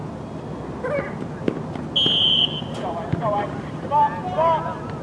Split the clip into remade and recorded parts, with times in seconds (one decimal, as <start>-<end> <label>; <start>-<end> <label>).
0.0-2.2 recorded; 2.2-4.0 remade; 4.0-5.0 recorded

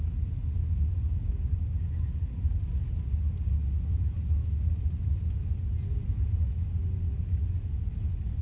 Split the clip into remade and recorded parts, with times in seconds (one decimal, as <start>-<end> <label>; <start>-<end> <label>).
0.0-8.4 recorded

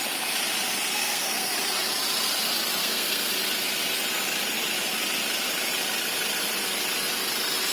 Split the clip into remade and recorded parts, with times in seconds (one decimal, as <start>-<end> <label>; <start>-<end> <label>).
0.0-0.9 recorded; 0.9-1.6 remade; 1.6-2.8 recorded; 2.8-3.3 remade; 3.3-7.7 recorded